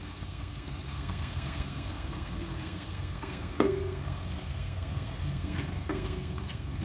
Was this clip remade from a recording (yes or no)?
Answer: yes